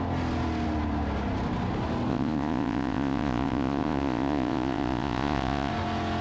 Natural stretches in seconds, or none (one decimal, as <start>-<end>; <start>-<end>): 0.0-2.1; 5.7-6.2

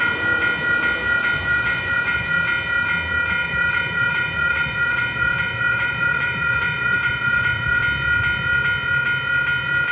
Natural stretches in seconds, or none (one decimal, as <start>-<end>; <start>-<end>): 0.0-1.4; 2.3-3.4; 7.8-9.9

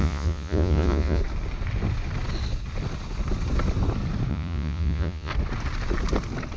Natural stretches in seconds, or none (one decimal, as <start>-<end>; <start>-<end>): 1.2-4.3; 5.3-6.6

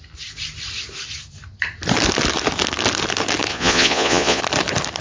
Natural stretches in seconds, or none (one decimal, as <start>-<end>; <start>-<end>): 0.0-3.5; 4.4-5.0

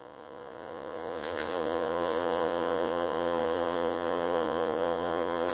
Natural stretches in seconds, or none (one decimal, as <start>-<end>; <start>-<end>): none